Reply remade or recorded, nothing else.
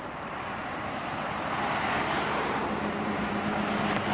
recorded